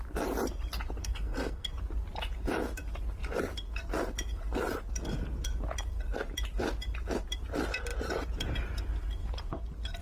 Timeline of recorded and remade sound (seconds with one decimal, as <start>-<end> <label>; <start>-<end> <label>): 0.0-1.0 recorded; 1.0-1.7 remade; 1.7-10.0 recorded